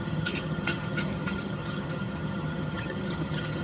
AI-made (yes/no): yes